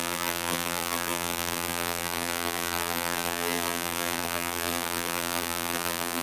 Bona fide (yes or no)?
no